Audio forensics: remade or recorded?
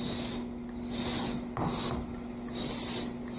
recorded